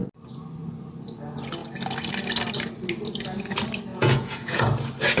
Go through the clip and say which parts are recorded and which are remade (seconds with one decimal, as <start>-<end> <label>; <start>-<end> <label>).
0.0-3.9 recorded; 3.9-4.6 remade; 4.6-5.2 recorded